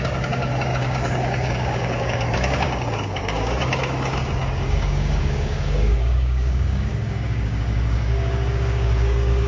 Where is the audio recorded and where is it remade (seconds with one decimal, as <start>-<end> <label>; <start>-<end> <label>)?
0.0-9.5 remade